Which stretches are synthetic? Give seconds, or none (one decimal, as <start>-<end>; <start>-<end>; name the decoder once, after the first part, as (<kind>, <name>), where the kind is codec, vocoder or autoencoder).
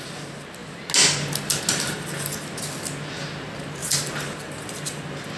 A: 3.8-4.5 (vocoder, BigVGAN v2)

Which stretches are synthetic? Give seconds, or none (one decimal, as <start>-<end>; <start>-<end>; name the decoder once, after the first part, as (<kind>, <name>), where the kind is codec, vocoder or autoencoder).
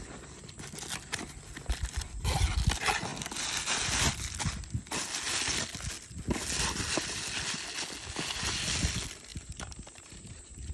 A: 9.3-10.7 (vocoder, BigVGAN v2)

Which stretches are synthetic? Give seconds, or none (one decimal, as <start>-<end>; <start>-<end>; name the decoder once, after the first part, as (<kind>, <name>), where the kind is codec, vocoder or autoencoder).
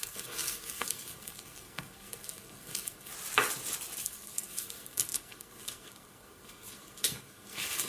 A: 0.0-3.1 (codec, SNAC); 4.0-7.9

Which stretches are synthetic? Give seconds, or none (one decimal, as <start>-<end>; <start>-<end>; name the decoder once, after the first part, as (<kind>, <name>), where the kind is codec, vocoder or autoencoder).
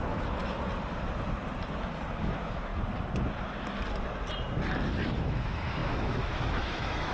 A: 0.0-0.4 (autoencoder, DAC-VAE); 2.2-2.7; 5.2-7.1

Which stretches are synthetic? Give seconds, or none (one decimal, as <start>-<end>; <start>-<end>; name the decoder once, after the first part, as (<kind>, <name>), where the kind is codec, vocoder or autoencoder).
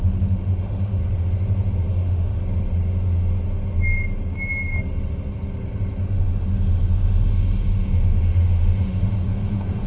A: 0.0-1.0 (autoencoder, DAC-VAE); 1.9-2.4; 6.0-9.9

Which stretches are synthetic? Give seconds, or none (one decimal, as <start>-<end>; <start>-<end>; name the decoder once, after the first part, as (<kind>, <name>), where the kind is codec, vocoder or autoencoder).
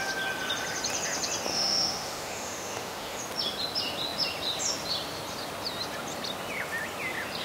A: 1.5-3.2 (autoencoder, DAC-VAE)